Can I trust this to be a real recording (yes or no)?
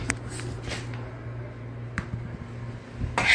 yes